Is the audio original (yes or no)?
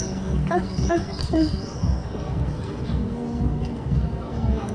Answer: no